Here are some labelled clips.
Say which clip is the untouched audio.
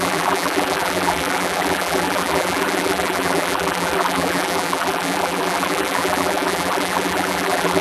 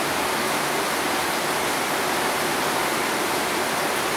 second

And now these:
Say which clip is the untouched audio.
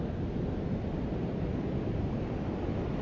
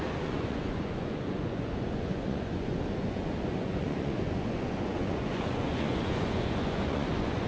first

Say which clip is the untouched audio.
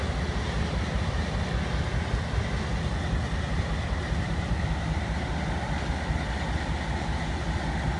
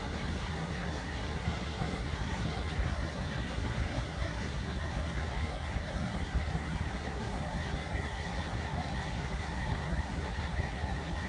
first